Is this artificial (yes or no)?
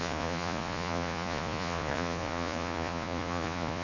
yes